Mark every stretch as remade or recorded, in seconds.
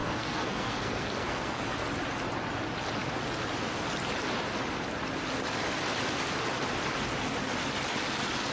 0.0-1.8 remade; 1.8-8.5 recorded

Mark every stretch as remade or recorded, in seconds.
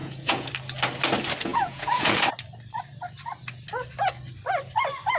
0.0-0.5 remade; 0.5-1.5 recorded; 1.5-2.2 remade; 2.2-5.2 recorded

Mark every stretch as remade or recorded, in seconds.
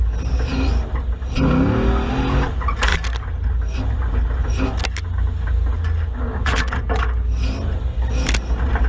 0.0-8.9 recorded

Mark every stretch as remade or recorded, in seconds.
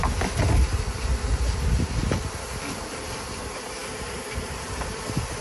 0.0-5.4 recorded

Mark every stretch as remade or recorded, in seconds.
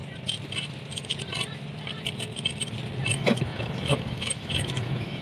0.0-3.1 recorded; 3.1-5.2 remade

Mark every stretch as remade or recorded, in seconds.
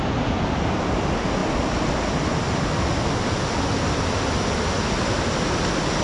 0.0-6.0 recorded